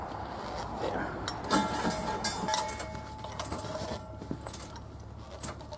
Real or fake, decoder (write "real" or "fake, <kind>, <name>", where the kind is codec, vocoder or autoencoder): real